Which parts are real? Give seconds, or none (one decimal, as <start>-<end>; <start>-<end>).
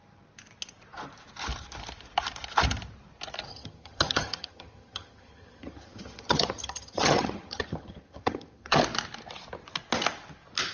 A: 0.0-3.5; 8.8-10.7